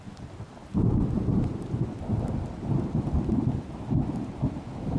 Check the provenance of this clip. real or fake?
real